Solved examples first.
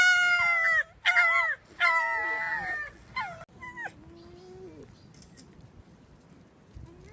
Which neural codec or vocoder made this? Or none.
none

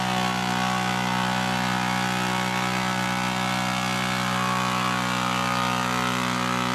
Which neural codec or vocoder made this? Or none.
none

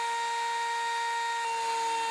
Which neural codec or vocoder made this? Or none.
none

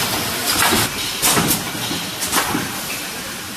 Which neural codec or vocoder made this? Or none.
none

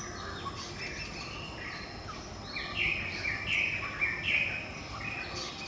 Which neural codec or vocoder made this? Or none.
none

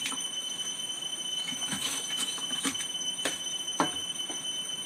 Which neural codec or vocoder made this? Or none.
autoencoder, DAC-VAE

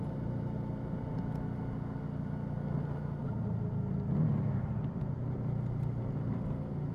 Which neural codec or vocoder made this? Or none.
none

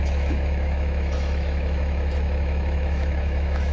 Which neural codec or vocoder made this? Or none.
autoencoder, DAC-VAE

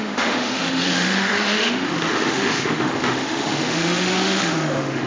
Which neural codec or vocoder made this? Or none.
autoencoder, DAC-VAE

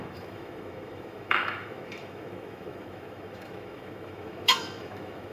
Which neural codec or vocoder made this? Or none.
autoencoder, DAC-VAE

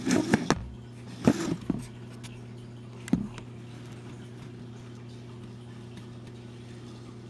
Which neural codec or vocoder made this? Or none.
none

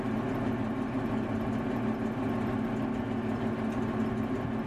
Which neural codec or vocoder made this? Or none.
none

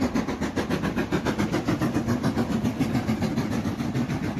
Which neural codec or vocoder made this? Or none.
none